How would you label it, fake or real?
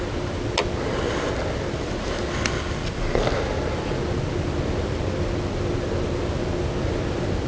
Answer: real